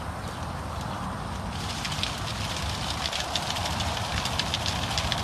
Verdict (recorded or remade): recorded